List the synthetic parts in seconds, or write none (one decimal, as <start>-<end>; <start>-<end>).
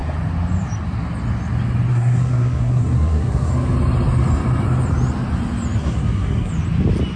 1.9-3.5; 5.8-6.5